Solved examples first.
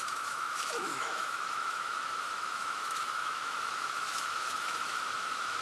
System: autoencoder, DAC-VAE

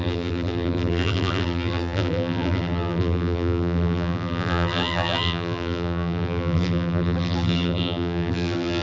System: vocoder, BigVGAN v2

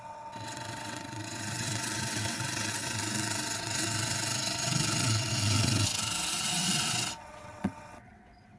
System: vocoder, WaveNeXt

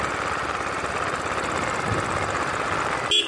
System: none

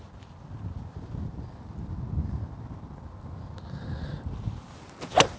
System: none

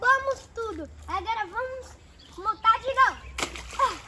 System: none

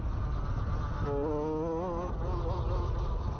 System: none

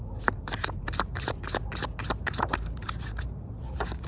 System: vocoder, BigVGAN v2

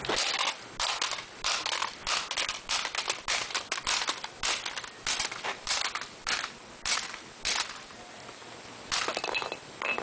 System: none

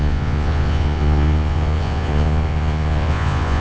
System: vocoder, Vocos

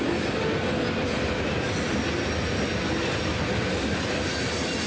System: none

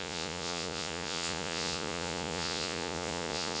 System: vocoder, Vocos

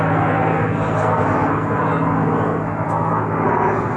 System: codec, SNAC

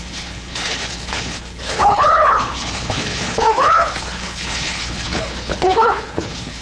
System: codec, HILCodec